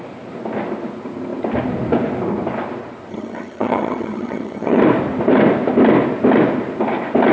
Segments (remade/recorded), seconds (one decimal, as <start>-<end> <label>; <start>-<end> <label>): 0.0-3.1 recorded; 3.1-4.8 remade; 4.8-7.3 recorded